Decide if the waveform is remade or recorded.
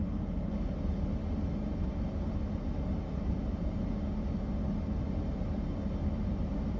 recorded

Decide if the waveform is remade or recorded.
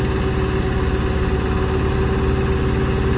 recorded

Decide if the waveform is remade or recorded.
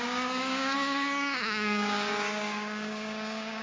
remade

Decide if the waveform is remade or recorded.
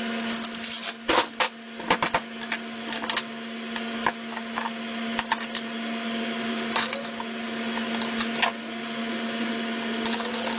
recorded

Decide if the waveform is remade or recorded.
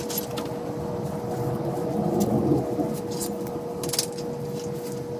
recorded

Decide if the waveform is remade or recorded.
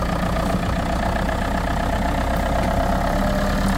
recorded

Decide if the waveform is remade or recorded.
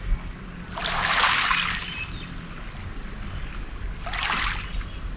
recorded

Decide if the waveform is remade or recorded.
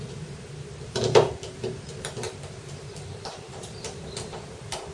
remade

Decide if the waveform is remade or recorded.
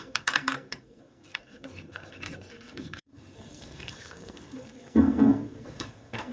remade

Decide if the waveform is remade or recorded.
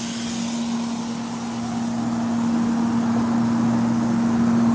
recorded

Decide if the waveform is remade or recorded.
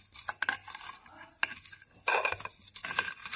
recorded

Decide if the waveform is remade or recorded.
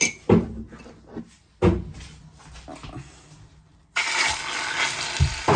recorded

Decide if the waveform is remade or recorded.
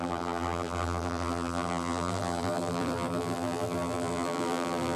remade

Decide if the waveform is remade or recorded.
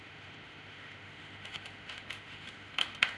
remade